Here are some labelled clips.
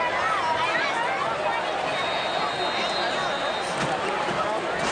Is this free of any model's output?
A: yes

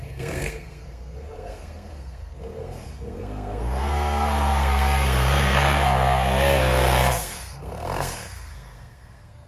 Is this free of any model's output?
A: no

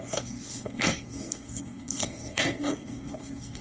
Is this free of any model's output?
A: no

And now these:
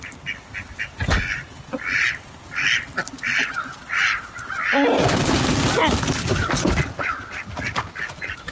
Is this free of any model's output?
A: yes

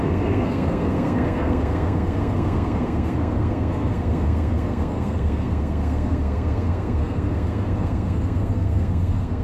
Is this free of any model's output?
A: no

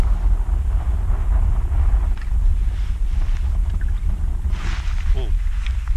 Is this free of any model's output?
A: yes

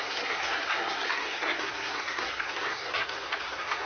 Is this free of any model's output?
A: no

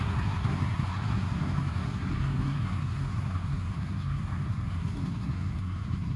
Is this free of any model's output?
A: no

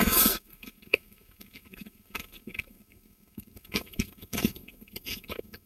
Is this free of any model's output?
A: no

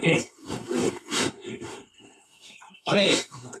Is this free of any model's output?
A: no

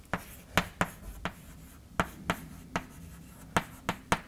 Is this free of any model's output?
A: yes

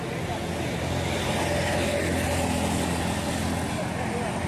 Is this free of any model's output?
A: yes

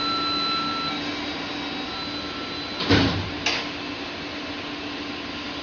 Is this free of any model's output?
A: yes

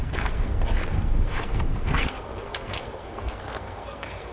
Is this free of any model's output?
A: no